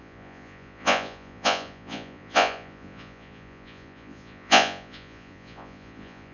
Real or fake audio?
fake